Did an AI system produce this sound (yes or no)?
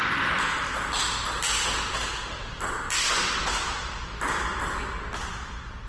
no